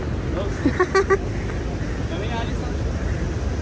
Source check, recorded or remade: recorded